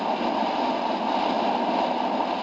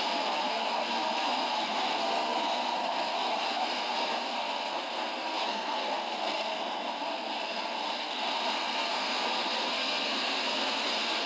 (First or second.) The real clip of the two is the first